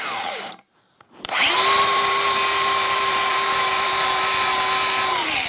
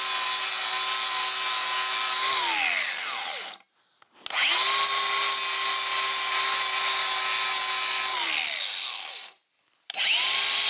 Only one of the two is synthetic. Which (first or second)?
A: first